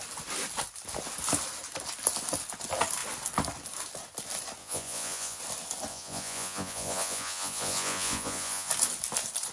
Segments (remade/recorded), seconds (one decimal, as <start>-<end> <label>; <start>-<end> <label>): 0.0-4.6 recorded; 4.6-5.4 remade; 5.4-5.9 recorded; 5.9-8.7 remade; 8.7-9.5 recorded